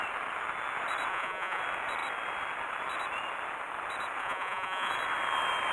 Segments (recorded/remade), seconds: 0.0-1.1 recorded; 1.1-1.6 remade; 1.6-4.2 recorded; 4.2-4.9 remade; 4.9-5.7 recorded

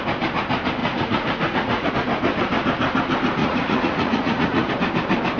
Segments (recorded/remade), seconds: 0.0-0.8 recorded; 0.8-1.9 remade; 1.9-3.4 recorded; 3.4-4.7 remade; 4.7-5.4 recorded

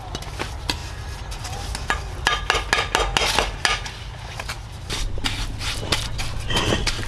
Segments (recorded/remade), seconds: 0.0-7.1 recorded